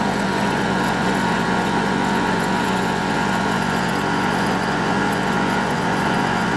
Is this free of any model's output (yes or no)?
no